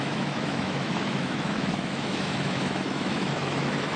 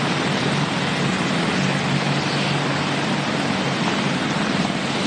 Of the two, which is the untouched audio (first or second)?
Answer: second